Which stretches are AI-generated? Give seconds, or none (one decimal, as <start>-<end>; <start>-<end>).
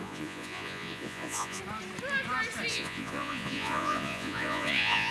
0.0-1.6; 2.7-5.1